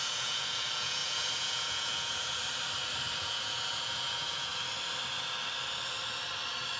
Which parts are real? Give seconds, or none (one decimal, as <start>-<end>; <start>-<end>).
2.4-3.2; 4.5-6.8